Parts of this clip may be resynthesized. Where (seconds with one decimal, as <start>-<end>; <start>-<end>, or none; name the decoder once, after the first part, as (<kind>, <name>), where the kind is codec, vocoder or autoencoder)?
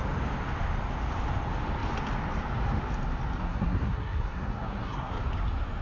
3.4-5.2 (codec, SNAC)